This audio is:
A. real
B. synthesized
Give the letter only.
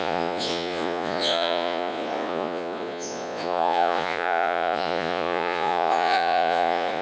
B